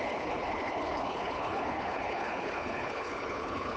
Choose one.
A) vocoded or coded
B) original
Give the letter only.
A